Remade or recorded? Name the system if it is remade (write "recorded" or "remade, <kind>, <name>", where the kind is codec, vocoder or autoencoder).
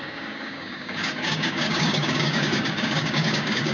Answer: remade, codec, DAC